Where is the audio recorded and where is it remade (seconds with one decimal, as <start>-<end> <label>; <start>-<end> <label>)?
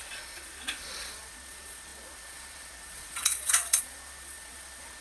0.0-5.0 remade